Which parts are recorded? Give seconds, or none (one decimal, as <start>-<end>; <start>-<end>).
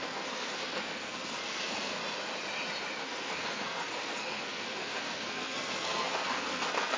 2.0-3.0